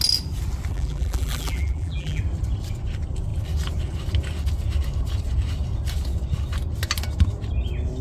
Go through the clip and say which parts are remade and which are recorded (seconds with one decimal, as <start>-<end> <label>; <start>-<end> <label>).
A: 0.0-0.7 recorded; 0.7-2.2 remade; 2.2-8.0 recorded